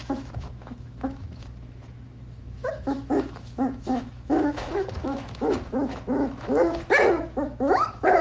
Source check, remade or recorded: remade